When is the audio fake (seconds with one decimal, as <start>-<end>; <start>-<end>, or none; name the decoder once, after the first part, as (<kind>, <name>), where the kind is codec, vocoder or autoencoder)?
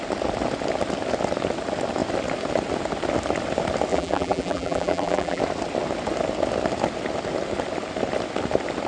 3.9-5.4 (vocoder, BigVGAN v2)